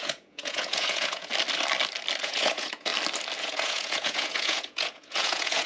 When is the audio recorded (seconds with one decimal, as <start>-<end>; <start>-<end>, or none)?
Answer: 1.3-2.2; 2.9-3.4